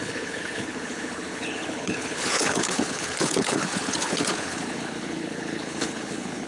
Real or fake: fake